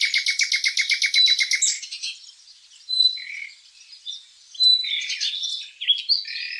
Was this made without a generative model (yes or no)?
yes